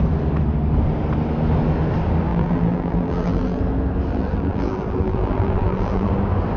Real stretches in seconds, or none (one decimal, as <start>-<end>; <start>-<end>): 0.0-2.3; 3.6-4.1; 6.1-6.6